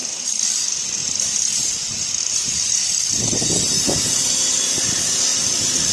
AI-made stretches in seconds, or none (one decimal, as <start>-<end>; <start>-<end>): 1.0-4.5; 5.3-5.9